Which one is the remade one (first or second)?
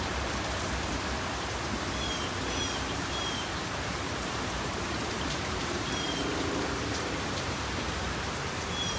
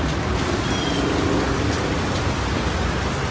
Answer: first